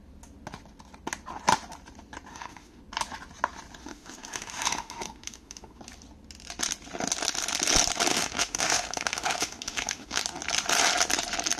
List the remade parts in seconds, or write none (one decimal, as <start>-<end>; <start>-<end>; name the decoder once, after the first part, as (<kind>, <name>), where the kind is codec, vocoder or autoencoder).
2.3-2.8 (autoencoder, DAC-VAE); 3.8-5.8; 8.1-10.2